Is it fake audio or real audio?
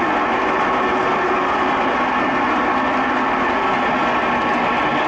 real